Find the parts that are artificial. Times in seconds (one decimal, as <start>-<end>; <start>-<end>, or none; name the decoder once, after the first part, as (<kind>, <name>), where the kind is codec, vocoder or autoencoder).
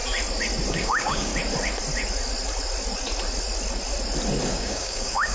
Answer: 0.7-1.3 (codec, DAC); 4.5-5.3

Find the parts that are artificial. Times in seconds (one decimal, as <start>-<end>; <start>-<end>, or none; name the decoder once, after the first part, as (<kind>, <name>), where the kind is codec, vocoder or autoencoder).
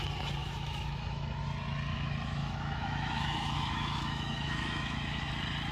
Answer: 0.4-1.4 (autoencoder, DAC-VAE); 1.9-5.3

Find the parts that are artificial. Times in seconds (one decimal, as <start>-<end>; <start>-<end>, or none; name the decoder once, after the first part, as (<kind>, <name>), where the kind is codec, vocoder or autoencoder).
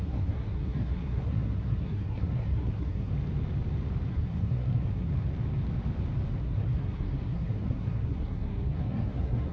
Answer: 0.0-3.1 (codec, SNAC); 4.1-5.1; 6.4-9.5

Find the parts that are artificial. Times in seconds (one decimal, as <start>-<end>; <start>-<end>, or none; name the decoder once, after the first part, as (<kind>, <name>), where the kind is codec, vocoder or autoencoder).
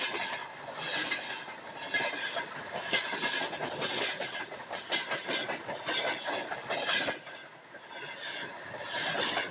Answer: 0.4-1.7 (vocoder, Vocos)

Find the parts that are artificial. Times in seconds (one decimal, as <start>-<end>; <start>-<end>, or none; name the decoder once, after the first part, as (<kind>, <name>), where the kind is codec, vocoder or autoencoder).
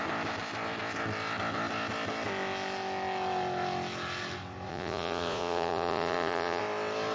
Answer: 4.7-6.6 (vocoder, Vocos)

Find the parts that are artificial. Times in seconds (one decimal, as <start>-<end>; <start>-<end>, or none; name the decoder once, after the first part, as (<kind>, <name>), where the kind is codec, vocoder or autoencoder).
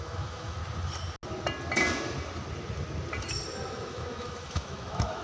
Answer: 0.0-0.6 (autoencoder, DAC-VAE); 3.7-5.2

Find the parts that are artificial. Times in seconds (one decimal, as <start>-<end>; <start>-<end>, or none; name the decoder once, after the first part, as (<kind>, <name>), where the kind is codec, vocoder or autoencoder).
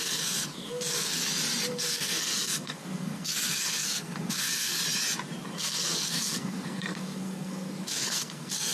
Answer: 0.0-1.2 (codec, SNAC); 1.7-4.8; 5.5-8.7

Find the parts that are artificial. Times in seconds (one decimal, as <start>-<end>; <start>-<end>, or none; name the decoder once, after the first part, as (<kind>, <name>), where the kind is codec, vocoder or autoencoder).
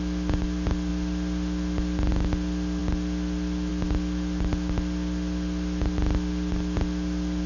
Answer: none